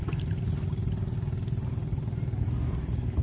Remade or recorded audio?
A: recorded